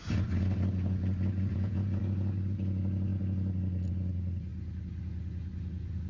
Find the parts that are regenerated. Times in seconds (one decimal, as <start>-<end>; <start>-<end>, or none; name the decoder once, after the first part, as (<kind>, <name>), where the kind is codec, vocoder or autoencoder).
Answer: 1.5-2.0 (vocoder, Vocos)